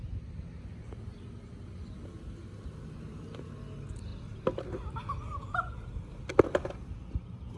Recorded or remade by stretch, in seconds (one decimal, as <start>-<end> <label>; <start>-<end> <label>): 0.0-7.6 recorded